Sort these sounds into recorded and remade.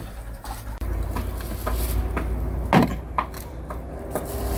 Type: recorded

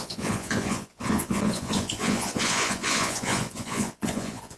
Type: remade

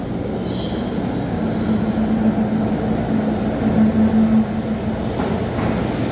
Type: recorded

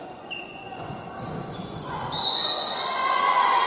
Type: remade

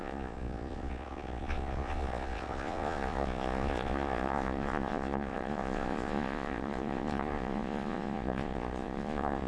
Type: remade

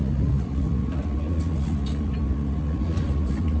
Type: remade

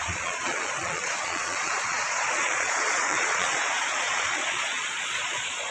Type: remade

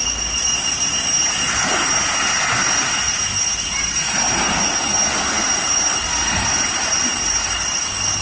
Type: recorded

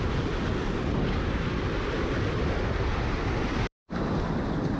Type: recorded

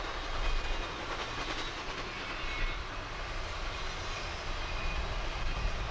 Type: recorded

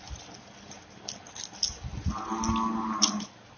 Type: recorded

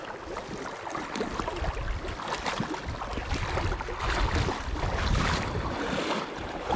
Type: recorded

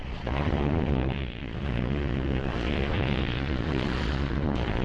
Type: remade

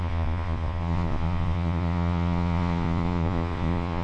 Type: remade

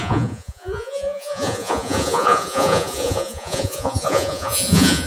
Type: remade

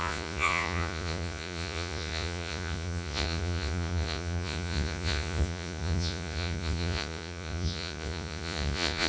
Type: remade